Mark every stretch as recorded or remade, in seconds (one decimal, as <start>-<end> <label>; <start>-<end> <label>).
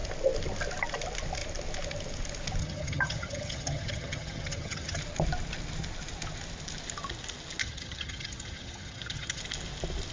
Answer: 0.0-2.6 recorded; 2.6-5.0 remade; 5.0-7.6 recorded; 7.6-9.4 remade; 9.4-10.1 recorded